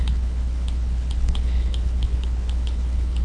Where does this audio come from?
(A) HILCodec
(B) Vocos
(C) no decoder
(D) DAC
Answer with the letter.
A